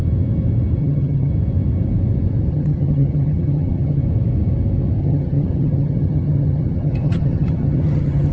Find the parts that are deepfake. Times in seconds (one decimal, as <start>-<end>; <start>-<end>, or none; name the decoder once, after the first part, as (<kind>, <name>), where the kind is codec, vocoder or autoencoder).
0.8-1.3 (vocoder, HiFi-GAN); 2.5-4.0; 5.0-8.3